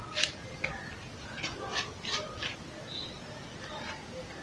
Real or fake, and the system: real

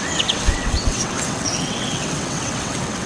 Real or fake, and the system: fake, vocoder, WaveNeXt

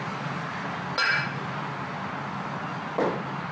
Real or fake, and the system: real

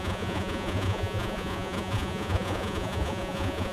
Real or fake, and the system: fake, vocoder, Vocos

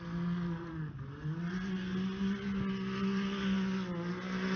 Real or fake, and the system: real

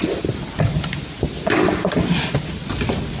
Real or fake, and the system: real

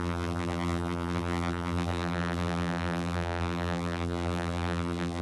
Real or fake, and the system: fake, vocoder, BigVGAN v2